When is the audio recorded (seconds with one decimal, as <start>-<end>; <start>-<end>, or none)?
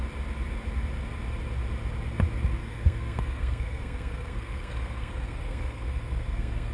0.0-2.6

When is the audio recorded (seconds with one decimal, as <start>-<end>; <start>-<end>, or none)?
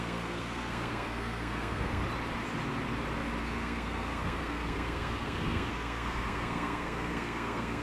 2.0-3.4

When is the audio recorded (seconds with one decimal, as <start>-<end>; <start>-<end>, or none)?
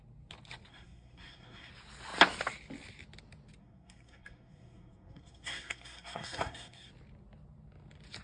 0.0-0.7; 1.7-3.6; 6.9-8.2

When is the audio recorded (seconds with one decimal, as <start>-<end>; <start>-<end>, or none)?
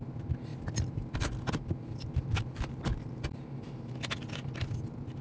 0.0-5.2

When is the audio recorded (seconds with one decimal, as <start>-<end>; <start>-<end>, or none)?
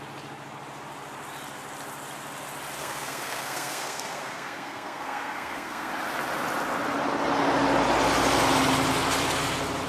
0.0-2.8; 5.9-9.9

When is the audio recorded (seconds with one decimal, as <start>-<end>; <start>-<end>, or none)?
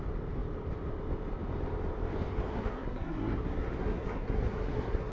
0.0-2.5